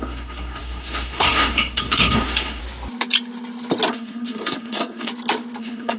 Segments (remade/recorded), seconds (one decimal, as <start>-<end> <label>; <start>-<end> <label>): 0.0-2.6 remade; 2.6-3.9 recorded; 3.9-5.1 remade; 5.1-5.6 recorded; 5.6-6.0 remade